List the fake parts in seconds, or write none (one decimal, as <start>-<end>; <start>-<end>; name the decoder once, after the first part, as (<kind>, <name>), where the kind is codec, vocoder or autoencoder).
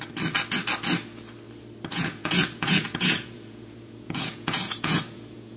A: 1.9-5.6 (vocoder, Vocos)